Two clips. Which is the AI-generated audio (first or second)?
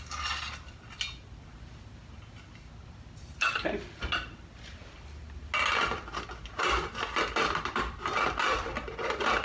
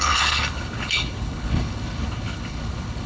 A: second